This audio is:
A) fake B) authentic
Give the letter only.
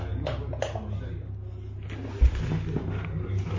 B